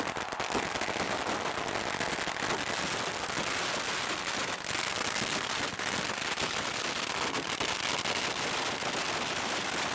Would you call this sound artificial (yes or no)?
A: no